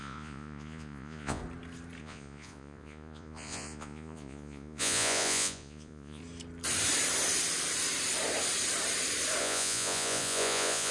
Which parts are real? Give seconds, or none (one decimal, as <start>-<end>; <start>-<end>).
1.4-2.0; 6.2-9.4